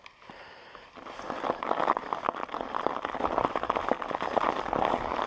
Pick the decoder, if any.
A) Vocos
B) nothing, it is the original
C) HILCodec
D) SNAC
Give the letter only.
B